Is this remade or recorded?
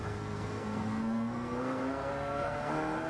remade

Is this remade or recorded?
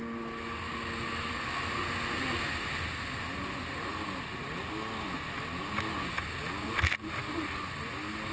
recorded